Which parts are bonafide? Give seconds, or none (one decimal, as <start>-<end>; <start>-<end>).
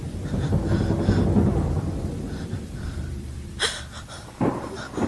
0.0-1.5; 4.6-5.1